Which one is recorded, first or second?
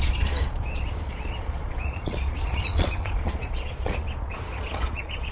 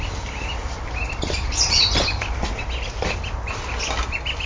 second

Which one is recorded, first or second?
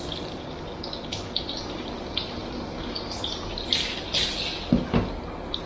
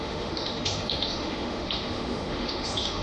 first